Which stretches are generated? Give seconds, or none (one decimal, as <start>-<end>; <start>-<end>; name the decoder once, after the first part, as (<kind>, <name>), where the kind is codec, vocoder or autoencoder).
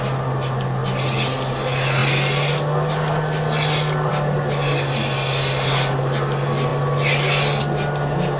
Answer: none